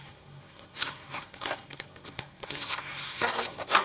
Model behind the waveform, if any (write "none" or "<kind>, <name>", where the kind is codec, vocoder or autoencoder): codec, SNAC